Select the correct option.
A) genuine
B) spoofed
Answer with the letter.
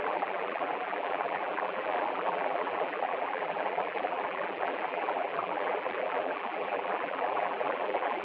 B